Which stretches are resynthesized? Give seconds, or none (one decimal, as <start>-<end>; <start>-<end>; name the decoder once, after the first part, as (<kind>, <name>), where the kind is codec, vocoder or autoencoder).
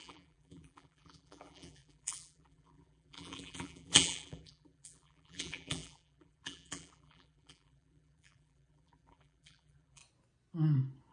0.0-10.0 (vocoder, BigVGAN v2)